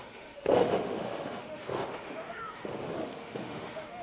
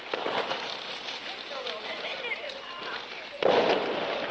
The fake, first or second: first